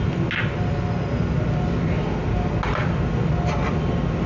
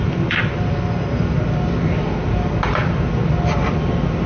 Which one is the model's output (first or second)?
second